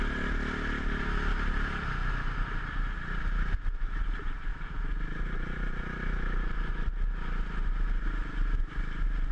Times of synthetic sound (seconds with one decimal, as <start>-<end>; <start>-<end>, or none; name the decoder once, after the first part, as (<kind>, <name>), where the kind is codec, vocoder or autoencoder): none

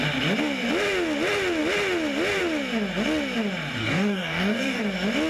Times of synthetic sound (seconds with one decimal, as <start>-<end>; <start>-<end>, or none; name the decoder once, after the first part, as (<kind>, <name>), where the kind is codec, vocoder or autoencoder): 3.8-4.8 (codec, DAC)

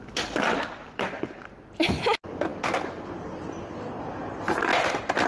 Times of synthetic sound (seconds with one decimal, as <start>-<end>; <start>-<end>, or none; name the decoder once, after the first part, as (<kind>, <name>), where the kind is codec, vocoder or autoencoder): 0.8-1.9 (vocoder, BigVGAN v2)

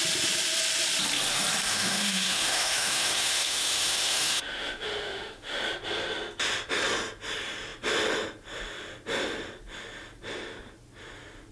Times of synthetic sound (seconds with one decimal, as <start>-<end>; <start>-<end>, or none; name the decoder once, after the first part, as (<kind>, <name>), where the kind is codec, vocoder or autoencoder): 1.7-5.6 (autoencoder, DAC-VAE)